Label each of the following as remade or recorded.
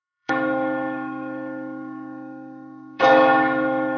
remade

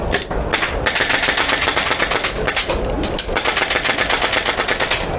recorded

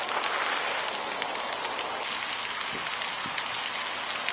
recorded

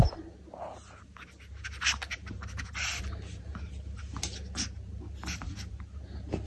recorded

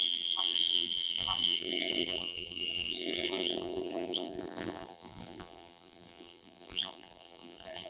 remade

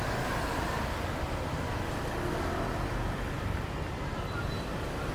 recorded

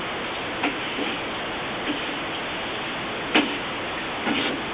recorded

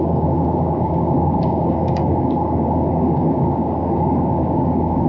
remade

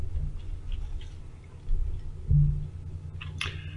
recorded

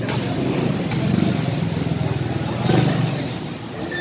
recorded